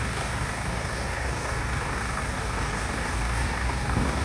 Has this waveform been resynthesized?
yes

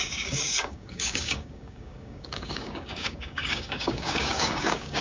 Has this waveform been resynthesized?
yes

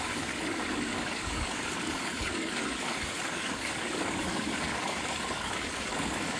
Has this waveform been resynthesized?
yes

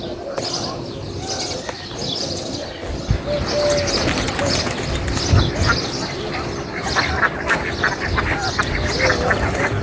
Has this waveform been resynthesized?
no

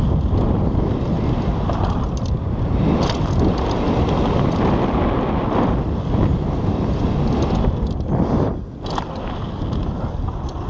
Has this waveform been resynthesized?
no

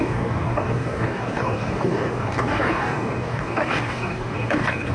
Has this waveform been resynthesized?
yes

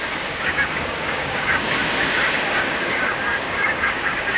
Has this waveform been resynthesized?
yes